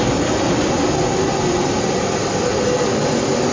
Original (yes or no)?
yes